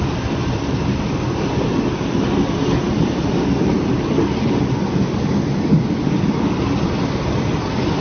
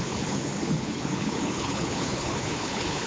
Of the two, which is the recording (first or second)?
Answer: first